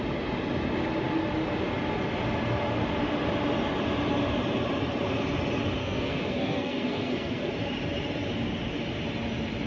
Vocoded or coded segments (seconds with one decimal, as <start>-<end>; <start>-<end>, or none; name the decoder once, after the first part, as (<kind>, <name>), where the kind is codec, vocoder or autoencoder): 5.8-7.5 (codec, SNAC)